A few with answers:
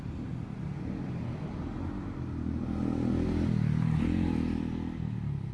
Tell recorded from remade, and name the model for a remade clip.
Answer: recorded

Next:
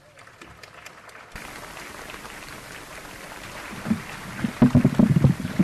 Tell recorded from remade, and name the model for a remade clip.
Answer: recorded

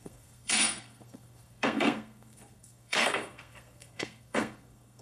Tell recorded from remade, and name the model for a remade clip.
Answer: remade, codec, SNAC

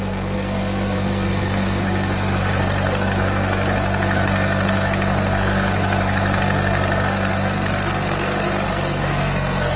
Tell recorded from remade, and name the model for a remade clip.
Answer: remade, codec, SNAC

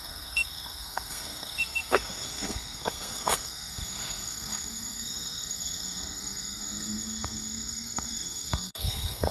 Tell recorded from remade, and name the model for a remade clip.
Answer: remade, codec, SNAC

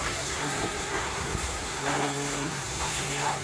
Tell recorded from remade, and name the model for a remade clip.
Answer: remade, codec, SNAC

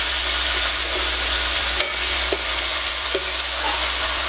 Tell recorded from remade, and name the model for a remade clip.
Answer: remade, vocoder, Vocos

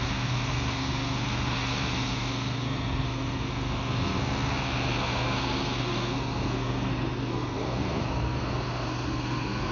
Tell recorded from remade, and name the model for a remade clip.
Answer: remade, codec, SNAC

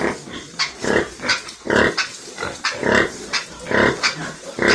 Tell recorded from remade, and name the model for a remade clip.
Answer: recorded